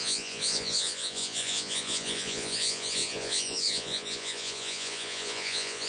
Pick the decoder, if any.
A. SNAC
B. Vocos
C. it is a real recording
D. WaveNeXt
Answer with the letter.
B